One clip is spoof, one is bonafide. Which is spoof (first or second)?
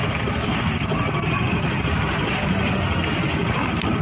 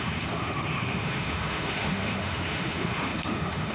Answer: second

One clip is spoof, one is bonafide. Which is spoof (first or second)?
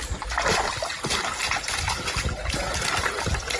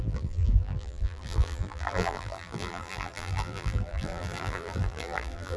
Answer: second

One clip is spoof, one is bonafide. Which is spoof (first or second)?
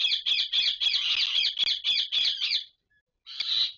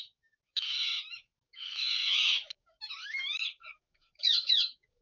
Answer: second